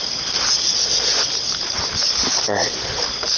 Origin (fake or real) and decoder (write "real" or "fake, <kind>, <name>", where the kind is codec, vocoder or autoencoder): fake, vocoder, BigVGAN v2